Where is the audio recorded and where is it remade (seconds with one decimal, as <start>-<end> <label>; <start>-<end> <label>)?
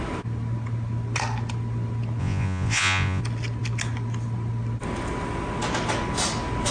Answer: 0.0-2.2 recorded; 2.2-3.2 remade; 3.2-6.7 recorded